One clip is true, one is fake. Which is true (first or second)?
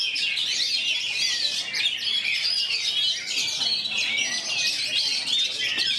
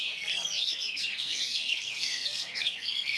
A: first